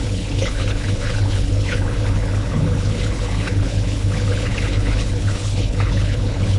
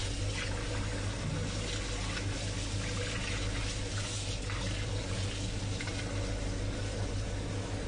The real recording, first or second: second